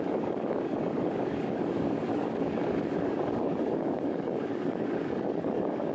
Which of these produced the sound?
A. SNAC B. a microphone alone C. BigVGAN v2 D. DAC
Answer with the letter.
D